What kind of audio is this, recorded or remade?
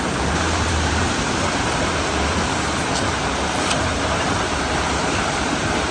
remade